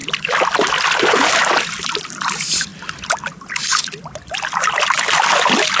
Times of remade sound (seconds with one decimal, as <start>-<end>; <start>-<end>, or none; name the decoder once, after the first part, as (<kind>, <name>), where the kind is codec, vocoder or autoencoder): none